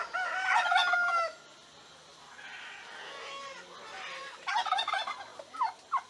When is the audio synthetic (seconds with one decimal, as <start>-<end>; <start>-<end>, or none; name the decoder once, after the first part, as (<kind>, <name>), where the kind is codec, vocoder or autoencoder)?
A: none